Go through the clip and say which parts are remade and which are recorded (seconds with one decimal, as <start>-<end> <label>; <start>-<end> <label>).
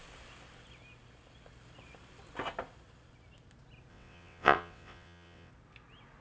0.0-3.9 recorded; 3.9-5.5 remade; 5.5-6.2 recorded